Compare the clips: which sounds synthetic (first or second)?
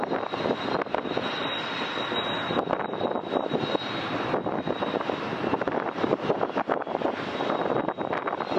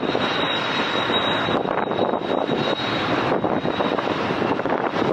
second